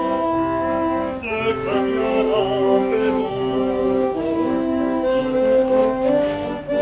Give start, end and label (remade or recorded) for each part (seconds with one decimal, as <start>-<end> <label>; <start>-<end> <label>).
0.0-1.5 recorded; 1.5-3.2 remade; 3.2-3.8 recorded; 3.8-5.2 remade; 5.2-6.8 recorded